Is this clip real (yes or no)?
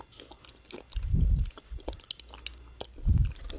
yes